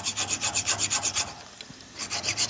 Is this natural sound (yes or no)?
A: yes